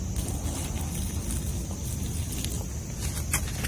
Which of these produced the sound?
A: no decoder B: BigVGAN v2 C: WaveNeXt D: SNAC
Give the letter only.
A